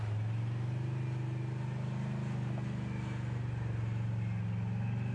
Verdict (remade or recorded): recorded